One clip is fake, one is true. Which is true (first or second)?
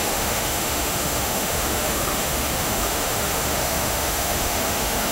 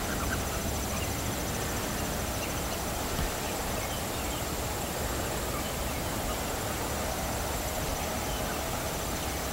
second